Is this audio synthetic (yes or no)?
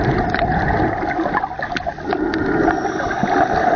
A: no